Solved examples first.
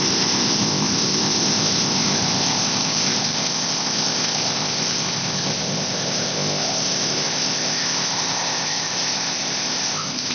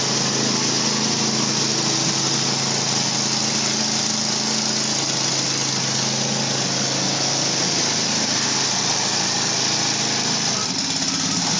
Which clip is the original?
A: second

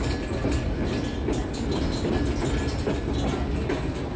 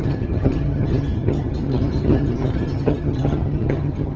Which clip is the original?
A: first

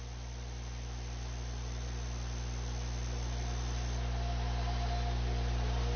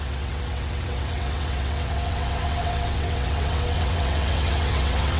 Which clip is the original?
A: first